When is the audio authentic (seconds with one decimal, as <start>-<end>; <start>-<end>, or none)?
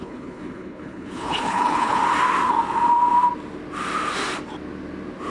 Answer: 2.0-5.3